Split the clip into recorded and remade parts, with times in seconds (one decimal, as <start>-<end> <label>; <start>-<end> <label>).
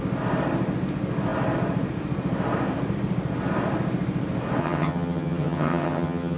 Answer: 0.0-4.6 recorded; 4.6-6.4 remade